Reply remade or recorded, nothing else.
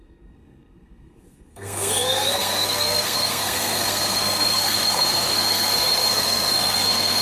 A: remade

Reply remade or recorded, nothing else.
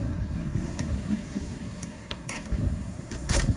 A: remade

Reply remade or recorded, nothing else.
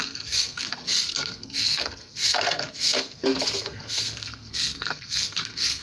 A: remade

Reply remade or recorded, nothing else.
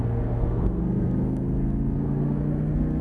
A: remade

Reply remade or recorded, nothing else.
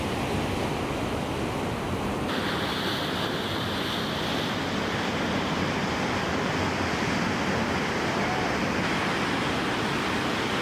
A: recorded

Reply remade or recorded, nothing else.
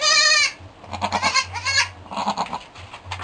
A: recorded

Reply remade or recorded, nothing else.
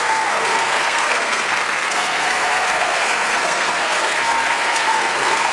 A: remade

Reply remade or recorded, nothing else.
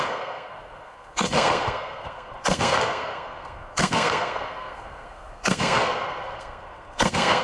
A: remade